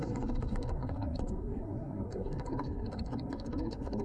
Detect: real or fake fake